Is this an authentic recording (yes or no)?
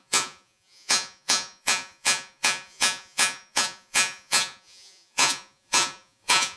no